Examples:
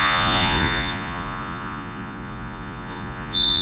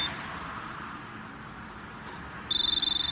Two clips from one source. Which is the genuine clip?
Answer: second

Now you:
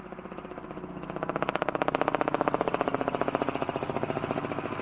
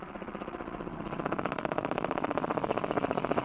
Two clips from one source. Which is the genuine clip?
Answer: first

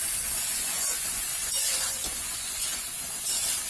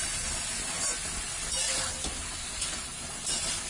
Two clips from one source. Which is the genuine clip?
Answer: second